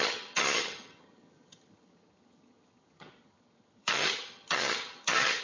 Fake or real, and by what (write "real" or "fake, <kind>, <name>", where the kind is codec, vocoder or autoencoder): fake, vocoder, HiFi-GAN